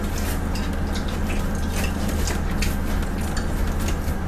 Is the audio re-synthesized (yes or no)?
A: no